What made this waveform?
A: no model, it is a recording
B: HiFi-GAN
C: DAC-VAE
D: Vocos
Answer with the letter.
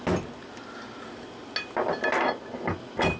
A